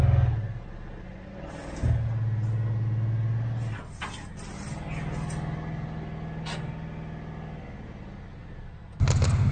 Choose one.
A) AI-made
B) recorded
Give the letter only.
B